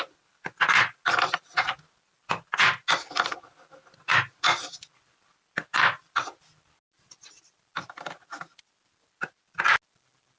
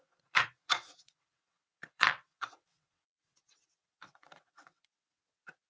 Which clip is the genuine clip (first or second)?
first